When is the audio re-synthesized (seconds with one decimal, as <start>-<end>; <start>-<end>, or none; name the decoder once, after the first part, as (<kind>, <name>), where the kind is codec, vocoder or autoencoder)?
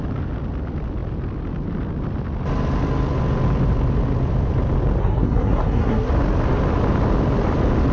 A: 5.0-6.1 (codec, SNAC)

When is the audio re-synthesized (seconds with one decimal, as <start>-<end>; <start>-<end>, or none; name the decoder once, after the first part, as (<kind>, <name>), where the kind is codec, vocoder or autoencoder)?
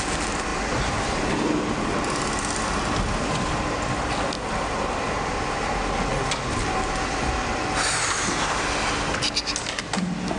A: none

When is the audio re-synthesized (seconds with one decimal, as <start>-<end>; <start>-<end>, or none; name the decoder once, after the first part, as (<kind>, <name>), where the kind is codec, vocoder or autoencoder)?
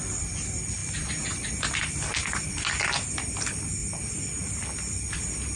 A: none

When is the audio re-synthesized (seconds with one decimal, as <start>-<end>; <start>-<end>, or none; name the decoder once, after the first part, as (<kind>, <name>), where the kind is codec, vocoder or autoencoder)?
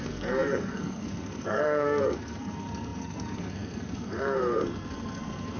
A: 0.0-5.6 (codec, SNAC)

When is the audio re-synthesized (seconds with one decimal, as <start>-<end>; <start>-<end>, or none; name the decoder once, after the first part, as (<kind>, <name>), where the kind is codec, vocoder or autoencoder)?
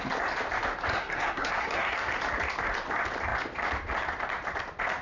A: 0.9-2.1 (codec, SNAC)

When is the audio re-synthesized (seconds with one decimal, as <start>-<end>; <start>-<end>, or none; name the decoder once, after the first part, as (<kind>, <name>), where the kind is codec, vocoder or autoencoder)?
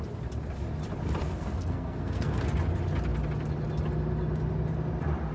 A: 1.2-2.4 (codec, SNAC)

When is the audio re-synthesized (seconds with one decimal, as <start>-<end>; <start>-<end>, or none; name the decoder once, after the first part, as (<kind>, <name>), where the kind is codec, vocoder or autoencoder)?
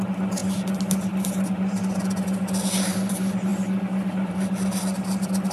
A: none